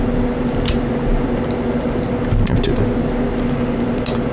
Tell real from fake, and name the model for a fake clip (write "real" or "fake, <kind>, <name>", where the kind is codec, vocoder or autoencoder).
real